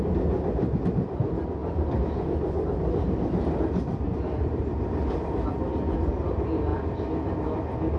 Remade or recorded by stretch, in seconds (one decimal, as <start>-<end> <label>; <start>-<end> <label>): 0.0-1.6 recorded; 1.6-6.1 remade; 6.1-8.0 recorded